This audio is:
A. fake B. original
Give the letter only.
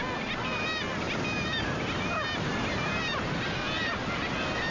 B